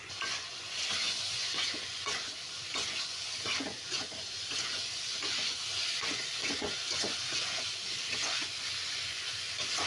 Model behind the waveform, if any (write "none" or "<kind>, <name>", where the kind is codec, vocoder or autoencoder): vocoder, Vocos